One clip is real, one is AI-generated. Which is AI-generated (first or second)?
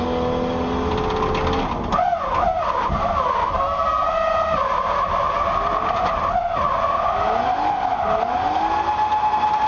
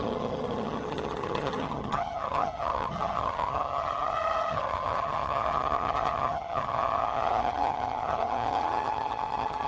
second